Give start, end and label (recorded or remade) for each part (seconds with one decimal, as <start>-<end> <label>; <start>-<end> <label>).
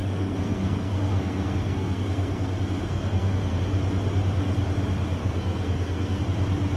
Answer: 0.0-3.6 remade; 3.6-5.2 recorded; 5.2-6.2 remade; 6.2-6.8 recorded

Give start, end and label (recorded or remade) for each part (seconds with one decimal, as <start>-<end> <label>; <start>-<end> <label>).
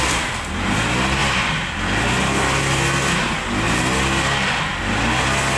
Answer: 0.0-5.6 recorded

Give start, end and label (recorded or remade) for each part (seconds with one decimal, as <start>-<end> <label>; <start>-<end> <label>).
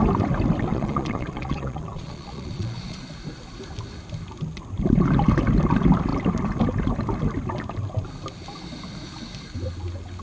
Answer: 0.0-0.7 recorded; 0.7-3.0 remade; 3.0-10.2 recorded